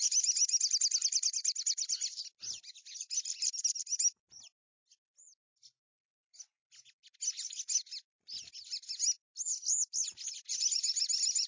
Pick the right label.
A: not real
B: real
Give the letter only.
B